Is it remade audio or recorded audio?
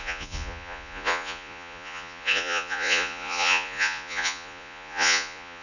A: remade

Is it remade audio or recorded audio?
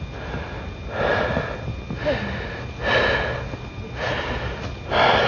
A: recorded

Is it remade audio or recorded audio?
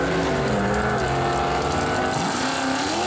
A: recorded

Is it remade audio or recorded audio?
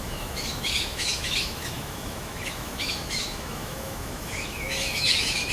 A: remade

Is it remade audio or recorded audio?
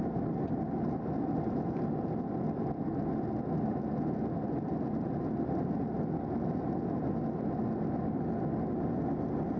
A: recorded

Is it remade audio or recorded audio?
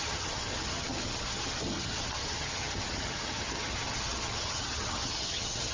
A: remade